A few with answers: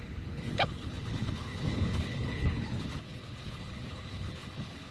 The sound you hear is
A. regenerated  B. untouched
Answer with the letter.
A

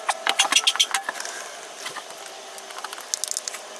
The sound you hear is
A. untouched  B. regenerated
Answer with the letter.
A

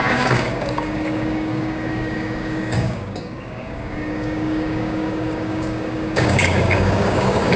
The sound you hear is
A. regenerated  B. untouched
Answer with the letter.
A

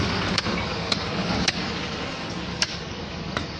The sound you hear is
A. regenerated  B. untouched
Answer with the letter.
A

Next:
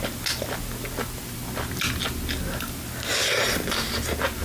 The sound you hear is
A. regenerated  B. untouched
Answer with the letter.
B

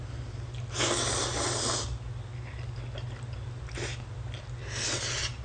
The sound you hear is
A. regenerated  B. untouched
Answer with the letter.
B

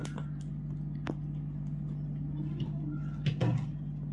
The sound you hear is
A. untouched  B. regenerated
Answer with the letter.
A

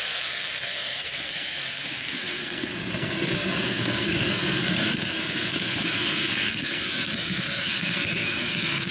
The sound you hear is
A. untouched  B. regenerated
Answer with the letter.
B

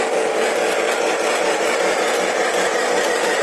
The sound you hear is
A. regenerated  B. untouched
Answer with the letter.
B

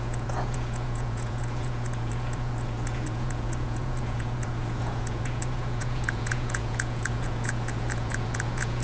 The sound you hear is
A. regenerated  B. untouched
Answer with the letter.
A